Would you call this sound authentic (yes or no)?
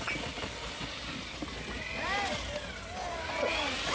yes